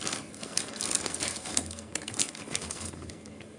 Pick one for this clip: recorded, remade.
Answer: remade